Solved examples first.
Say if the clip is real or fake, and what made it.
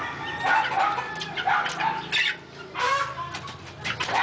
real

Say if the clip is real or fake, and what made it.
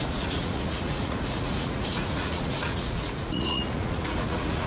fake, vocoder, Vocos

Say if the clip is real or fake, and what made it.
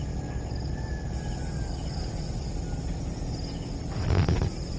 real